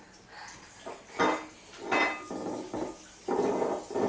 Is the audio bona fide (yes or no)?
yes